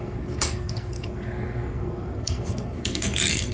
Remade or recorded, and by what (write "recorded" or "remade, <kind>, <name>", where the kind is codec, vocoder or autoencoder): remade, codec, SNAC